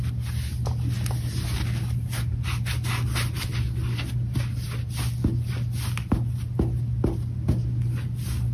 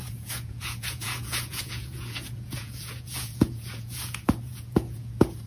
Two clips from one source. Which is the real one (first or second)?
first